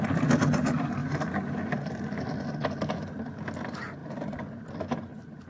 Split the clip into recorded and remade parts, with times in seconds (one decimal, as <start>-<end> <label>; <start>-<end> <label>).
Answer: 0.0-4.0 recorded; 4.0-4.7 remade; 4.7-5.5 recorded